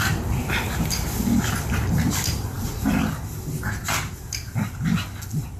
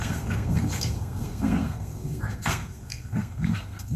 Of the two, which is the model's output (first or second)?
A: second